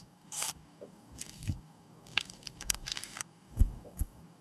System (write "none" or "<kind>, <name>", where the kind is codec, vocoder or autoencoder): codec, DAC